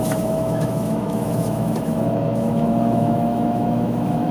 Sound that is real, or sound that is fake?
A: fake